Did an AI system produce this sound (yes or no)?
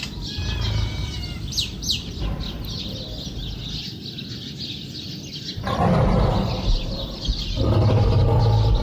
no